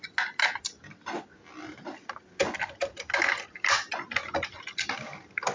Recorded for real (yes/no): yes